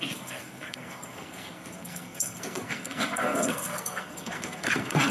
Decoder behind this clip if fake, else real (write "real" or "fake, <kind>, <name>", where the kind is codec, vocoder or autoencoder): fake, codec, SNAC